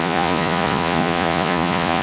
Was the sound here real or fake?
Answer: fake